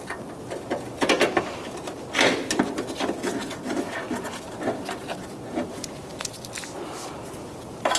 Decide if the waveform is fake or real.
real